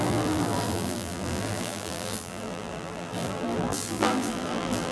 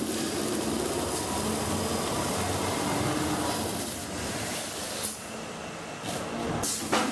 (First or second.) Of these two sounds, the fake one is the first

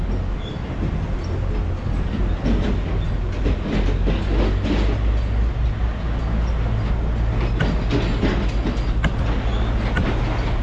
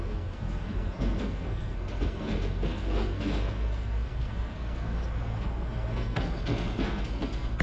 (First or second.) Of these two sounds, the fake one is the second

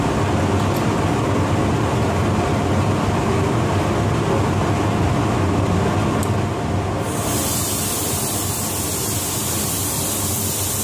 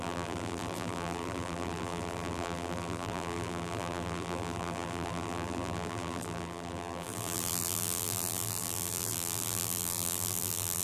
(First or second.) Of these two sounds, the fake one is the second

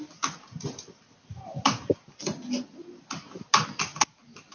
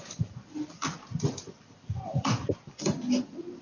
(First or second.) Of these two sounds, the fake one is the second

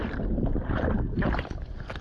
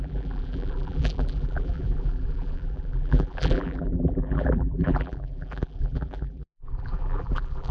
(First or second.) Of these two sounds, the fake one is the second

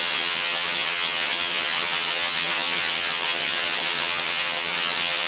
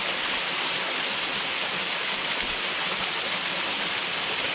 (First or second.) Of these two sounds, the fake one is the first